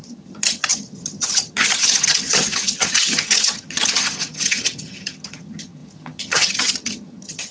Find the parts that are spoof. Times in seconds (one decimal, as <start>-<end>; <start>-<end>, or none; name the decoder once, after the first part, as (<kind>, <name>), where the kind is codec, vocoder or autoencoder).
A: 0.0-7.5 (vocoder, HiFi-GAN)